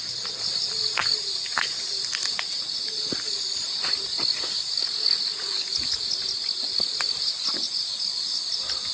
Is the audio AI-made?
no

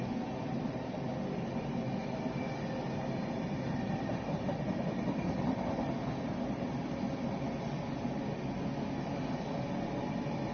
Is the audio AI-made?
no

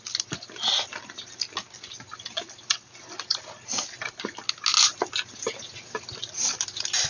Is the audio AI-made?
no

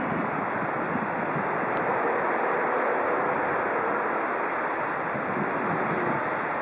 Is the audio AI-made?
no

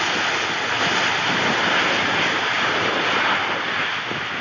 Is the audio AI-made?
no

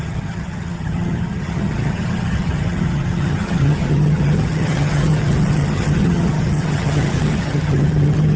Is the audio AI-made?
yes